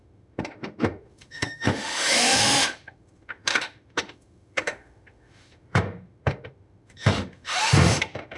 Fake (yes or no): yes